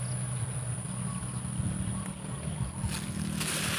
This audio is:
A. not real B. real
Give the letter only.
B